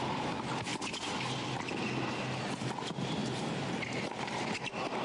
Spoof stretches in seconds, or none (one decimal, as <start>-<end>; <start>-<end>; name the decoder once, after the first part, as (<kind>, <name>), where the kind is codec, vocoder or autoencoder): 3.2-4.4 (vocoder, BigVGAN v2)